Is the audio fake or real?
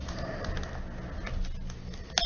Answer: real